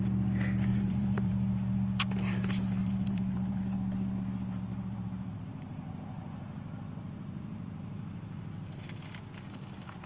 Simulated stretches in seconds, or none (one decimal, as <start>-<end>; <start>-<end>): 0.7-1.3; 2.8-3.6; 4.7-8.9